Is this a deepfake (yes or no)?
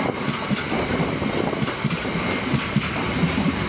no